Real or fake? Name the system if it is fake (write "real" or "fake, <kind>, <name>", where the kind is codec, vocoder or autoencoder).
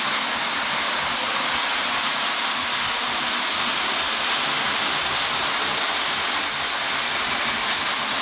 real